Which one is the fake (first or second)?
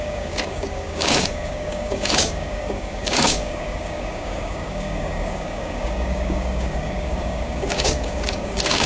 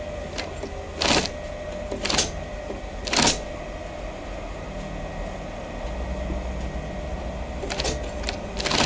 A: first